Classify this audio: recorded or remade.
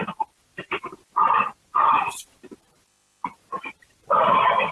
recorded